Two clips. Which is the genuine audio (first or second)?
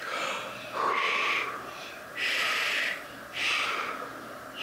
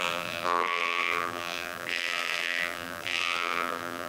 first